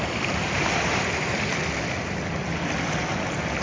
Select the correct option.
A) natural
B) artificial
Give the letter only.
A